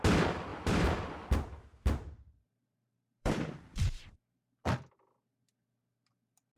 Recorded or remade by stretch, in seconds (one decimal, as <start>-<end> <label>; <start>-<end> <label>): 0.0-0.5 recorded; 0.5-1.1 remade; 1.1-1.7 recorded; 1.7-4.2 remade; 4.2-6.6 recorded